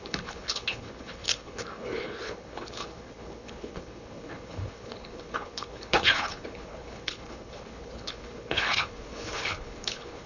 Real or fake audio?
fake